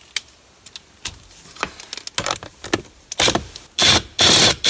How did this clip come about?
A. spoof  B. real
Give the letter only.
B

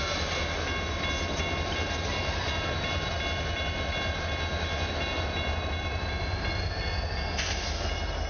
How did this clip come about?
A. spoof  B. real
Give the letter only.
B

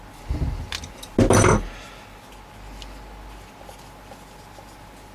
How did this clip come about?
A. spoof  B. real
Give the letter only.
B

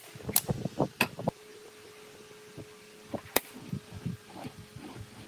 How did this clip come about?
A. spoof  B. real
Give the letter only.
B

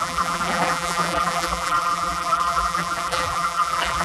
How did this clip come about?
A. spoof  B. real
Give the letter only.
A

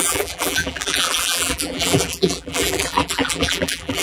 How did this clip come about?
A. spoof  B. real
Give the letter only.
A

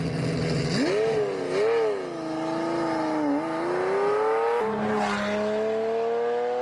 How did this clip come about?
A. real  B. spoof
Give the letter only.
A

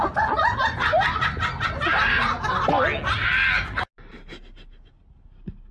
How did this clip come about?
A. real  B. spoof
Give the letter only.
A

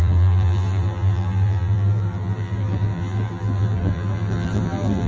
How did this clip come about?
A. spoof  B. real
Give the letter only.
A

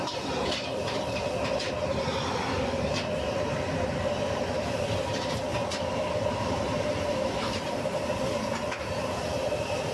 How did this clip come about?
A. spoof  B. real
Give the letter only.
A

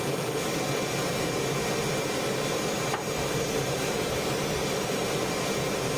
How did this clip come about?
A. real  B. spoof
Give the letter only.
A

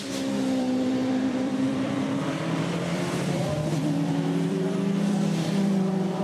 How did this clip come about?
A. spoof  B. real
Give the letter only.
A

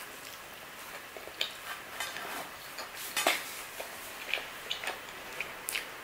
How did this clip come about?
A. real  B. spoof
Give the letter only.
A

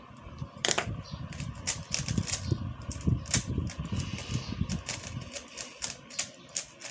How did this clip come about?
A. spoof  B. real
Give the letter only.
A